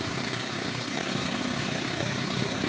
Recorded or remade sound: remade